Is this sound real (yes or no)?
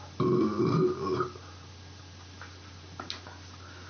yes